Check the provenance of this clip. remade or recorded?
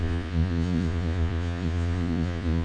remade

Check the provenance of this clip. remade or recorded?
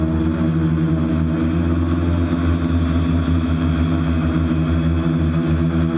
recorded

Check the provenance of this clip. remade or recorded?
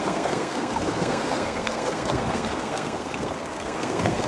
remade